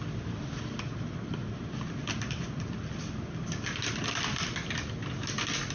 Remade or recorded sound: recorded